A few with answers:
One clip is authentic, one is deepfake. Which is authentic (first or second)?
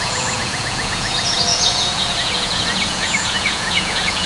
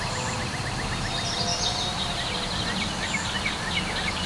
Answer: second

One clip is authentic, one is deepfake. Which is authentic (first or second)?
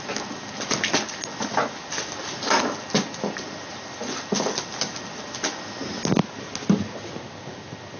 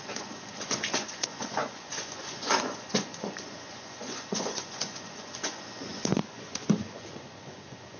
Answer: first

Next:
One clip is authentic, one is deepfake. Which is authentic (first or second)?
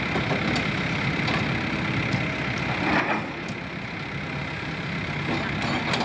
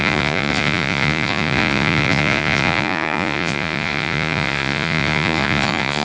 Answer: first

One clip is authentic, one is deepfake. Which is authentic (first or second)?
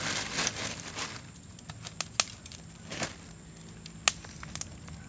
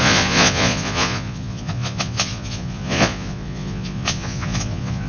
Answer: first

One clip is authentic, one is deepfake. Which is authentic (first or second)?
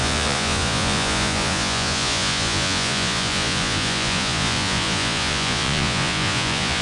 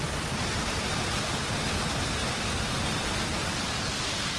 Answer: second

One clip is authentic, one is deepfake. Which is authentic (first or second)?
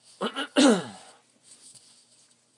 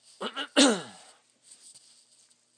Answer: second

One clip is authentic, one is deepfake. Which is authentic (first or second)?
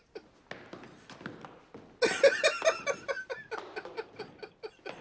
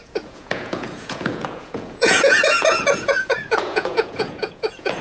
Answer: first